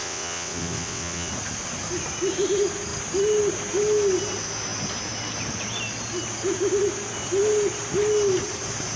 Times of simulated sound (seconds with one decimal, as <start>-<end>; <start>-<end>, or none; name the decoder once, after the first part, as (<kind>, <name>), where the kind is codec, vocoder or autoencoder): 0.0-1.3 (vocoder, WaveNeXt)